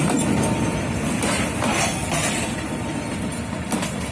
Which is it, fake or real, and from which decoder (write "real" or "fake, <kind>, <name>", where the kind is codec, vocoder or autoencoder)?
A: real